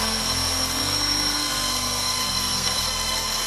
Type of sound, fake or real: fake